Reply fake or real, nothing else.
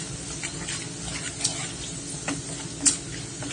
real